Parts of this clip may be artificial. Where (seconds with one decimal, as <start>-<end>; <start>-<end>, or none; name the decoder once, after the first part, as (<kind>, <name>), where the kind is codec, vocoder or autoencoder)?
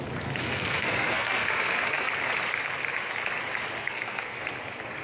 0.4-2.1 (codec, SNAC); 3.8-4.4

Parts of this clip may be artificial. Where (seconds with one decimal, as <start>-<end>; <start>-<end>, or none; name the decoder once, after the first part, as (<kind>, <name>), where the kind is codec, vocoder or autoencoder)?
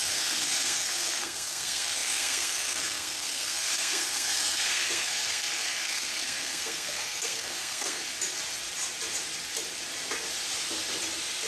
0.0-8.0 (codec, SNAC)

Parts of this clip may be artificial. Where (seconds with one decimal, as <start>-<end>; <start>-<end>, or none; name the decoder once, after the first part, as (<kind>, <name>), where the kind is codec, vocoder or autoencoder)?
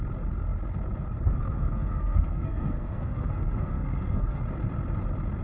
1.4-4.4 (codec, SNAC)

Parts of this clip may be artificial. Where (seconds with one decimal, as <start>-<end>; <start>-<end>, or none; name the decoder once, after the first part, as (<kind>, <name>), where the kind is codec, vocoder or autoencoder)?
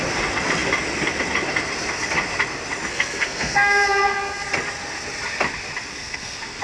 2.9-4.5 (codec, SNAC); 5.9-6.6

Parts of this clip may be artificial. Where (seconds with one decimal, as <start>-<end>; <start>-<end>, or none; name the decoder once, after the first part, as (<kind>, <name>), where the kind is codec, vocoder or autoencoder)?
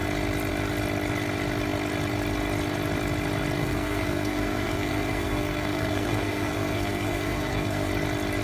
3.6-7.9 (codec, SNAC)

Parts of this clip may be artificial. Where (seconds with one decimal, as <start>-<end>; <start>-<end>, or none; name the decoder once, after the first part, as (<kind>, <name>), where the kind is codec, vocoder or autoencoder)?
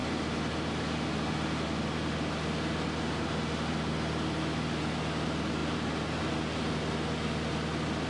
none